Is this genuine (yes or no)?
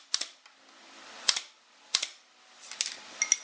yes